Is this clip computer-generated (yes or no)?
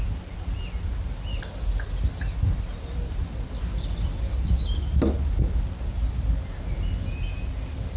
no